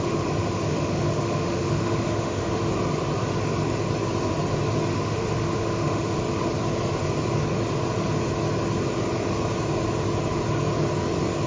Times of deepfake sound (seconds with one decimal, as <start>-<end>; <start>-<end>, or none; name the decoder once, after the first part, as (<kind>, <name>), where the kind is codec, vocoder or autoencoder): 0.4-2.7 (autoencoder, DAC-VAE); 4.9-6.2